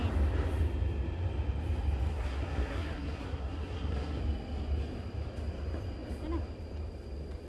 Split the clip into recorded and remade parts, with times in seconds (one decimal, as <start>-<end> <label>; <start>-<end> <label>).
0.0-2.1 recorded; 2.1-4.2 remade; 4.2-7.5 recorded